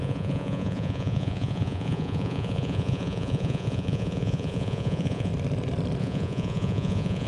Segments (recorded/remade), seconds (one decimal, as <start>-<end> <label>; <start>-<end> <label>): 0.0-5.3 remade; 5.3-6.0 recorded; 6.0-7.3 remade